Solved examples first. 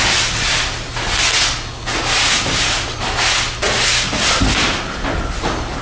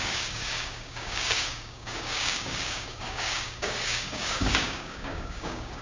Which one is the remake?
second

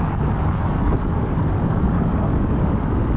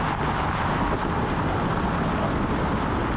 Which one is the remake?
first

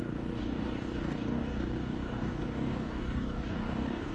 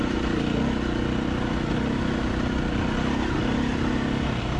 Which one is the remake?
first